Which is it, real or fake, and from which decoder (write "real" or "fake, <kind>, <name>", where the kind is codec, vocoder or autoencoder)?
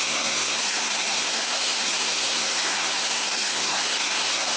fake, codec, SNAC